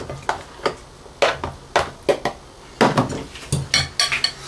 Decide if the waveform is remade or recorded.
recorded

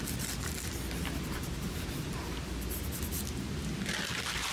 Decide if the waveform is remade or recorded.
recorded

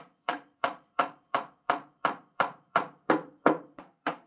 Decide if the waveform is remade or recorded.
remade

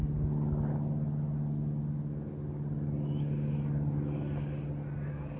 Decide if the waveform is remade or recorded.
recorded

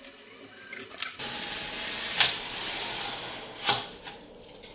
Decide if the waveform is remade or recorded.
recorded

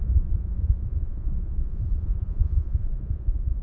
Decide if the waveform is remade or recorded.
remade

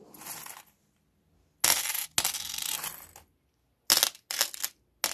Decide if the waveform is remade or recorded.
recorded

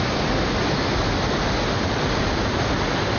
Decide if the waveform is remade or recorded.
recorded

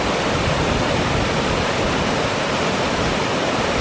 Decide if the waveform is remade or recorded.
recorded